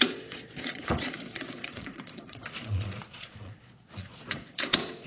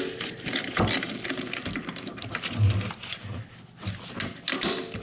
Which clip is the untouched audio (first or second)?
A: second